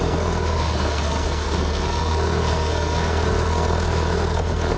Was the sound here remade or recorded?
remade